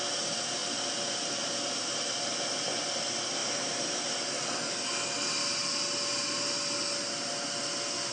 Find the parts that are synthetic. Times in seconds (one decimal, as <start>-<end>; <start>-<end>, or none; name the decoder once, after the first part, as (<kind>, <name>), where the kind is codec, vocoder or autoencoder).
none